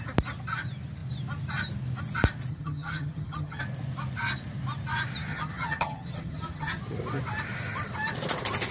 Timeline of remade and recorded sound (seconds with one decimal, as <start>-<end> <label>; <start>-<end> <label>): 0.0-2.5 recorded; 2.5-3.6 remade; 3.6-5.3 recorded; 5.3-6.8 remade; 6.8-8.7 recorded